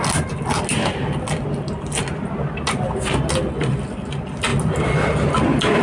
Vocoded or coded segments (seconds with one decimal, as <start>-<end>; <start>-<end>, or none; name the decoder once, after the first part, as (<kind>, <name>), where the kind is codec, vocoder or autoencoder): none